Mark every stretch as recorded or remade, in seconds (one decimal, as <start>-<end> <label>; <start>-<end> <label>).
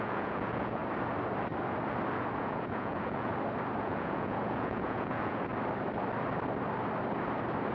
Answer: 0.0-0.8 remade; 0.8-2.4 recorded; 2.4-3.3 remade; 3.3-3.8 recorded; 3.8-5.5 remade; 5.5-7.7 recorded